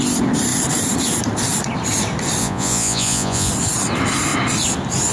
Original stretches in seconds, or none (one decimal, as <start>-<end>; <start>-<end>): 0.0-2.4; 3.5-5.1